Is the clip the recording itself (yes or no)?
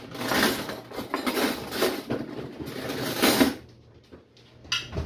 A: yes